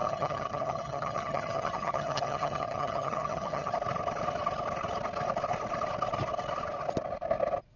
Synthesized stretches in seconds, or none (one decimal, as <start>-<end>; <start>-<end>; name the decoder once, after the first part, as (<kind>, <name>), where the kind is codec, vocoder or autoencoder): 0.0-3.7 (vocoder, HiFi-GAN)